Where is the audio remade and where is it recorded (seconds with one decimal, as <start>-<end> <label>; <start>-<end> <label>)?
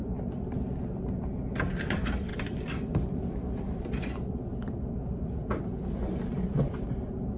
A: 0.0-1.7 recorded; 1.7-7.4 remade